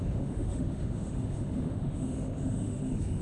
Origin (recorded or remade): remade